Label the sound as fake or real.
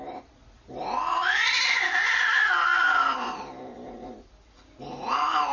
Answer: real